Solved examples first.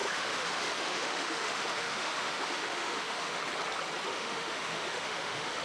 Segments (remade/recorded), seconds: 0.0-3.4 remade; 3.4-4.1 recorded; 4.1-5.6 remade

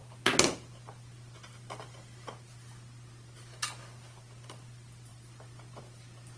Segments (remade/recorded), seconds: 0.0-6.4 recorded

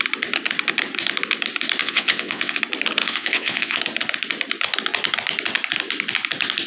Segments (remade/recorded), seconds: 0.0-1.8 recorded; 1.8-2.6 remade; 2.6-3.0 recorded; 3.0-3.8 remade; 3.8-6.7 recorded